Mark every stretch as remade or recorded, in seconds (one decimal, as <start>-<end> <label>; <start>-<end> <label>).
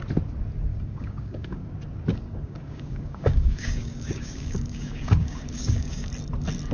0.0-0.7 recorded; 0.7-1.7 remade; 1.7-2.1 recorded; 2.1-6.1 remade; 6.1-6.7 recorded